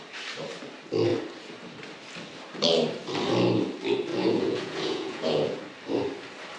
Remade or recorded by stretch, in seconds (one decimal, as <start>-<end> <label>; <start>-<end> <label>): 0.0-4.1 recorded; 4.1-5.6 remade; 5.6-6.6 recorded